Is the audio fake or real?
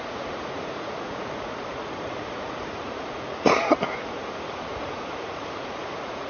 fake